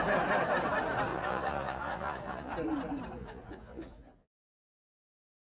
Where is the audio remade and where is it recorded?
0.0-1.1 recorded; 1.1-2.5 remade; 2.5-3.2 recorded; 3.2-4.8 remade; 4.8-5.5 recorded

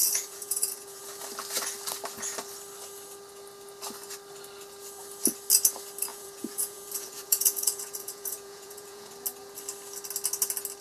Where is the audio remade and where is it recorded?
0.0-1.0 remade; 1.0-6.1 recorded; 6.1-9.1 remade; 9.1-10.8 recorded

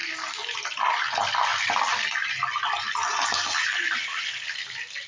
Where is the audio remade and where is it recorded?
0.0-5.1 recorded

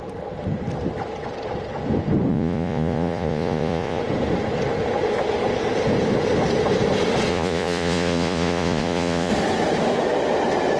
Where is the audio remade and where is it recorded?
0.0-2.3 recorded; 2.3-4.0 remade; 4.0-7.3 recorded; 7.3-9.3 remade; 9.3-10.8 recorded